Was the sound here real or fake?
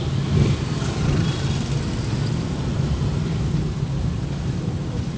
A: real